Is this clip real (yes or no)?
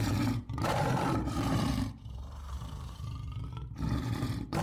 no